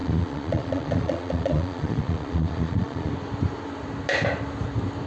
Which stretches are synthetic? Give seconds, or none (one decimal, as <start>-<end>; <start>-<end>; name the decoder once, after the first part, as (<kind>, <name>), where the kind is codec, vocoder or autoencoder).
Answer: 0.0-3.1 (vocoder, Vocos)